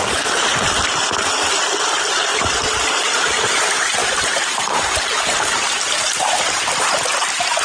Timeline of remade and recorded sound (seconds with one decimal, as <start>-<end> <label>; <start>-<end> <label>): 0.0-2.3 recorded; 2.3-3.5 remade; 3.5-4.0 recorded; 4.0-5.7 remade; 5.7-7.6 recorded